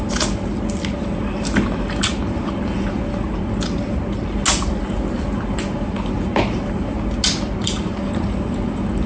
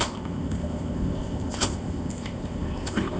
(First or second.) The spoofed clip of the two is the second